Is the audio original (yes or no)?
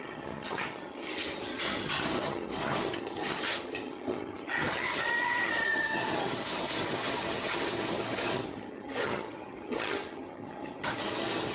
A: no